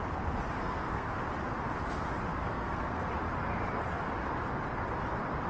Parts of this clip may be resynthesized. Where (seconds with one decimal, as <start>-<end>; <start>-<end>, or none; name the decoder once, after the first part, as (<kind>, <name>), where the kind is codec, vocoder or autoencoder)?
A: 0.6-1.1 (codec, SNAC); 2.3-3.1